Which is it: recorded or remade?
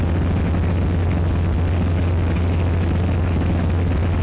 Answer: recorded